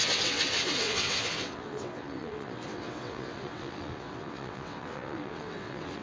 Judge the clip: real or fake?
fake